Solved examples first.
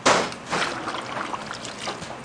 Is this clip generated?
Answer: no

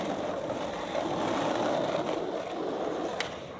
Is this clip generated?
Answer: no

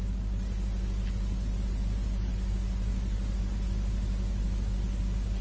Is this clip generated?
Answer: no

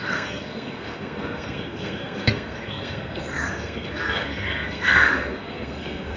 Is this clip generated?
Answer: yes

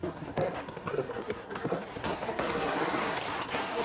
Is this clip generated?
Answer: yes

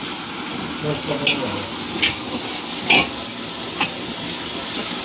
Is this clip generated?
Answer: no